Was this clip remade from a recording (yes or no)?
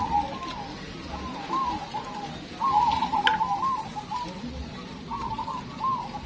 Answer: no